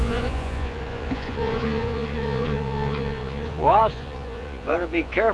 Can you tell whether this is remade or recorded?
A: remade